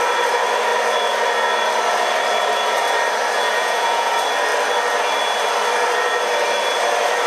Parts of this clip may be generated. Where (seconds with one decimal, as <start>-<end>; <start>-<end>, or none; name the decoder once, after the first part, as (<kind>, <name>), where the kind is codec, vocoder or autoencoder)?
3.5-4.1 (vocoder, Vocos)